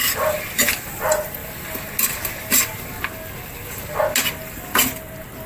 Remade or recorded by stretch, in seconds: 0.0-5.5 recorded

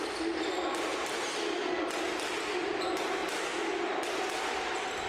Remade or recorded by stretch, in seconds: 0.0-0.9 remade; 0.9-2.5 recorded; 2.5-3.2 remade; 3.2-4.1 recorded; 4.1-5.1 remade

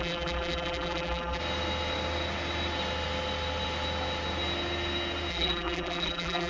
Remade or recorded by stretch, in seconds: 0.0-1.4 remade; 1.4-5.3 recorded; 5.3-6.5 remade

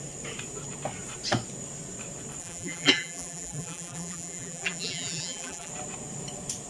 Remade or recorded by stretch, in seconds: 0.0-2.4 recorded; 2.4-5.7 remade; 5.7-6.7 recorded

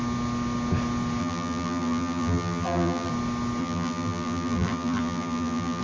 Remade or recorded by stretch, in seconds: 0.0-1.2 recorded; 1.2-3.1 remade; 3.1-3.6 recorded; 3.6-5.8 remade